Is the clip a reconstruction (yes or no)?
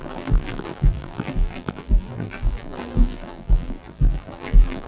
yes